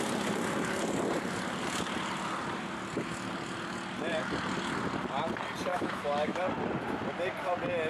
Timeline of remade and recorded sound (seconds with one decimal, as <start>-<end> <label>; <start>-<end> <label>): 0.0-5.7 recorded; 5.7-6.4 remade; 6.4-7.9 recorded